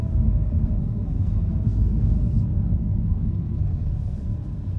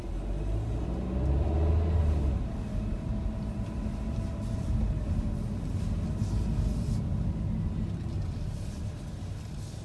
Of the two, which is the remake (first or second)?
first